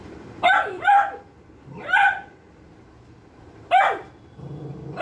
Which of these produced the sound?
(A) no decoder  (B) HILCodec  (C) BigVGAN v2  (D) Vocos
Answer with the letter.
A